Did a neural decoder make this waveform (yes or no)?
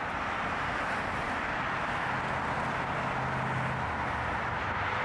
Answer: no